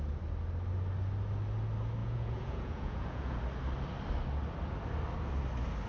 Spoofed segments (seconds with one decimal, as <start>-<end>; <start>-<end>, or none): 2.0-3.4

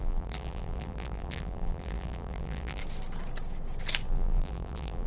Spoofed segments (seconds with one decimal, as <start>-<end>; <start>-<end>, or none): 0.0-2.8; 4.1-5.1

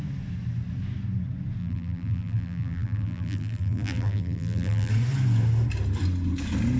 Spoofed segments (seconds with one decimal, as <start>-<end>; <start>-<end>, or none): 1.6-4.9

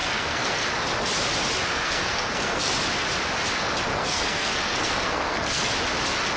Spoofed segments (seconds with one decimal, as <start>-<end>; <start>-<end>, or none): 0.0-0.7; 1.7-2.7; 3.9-5.7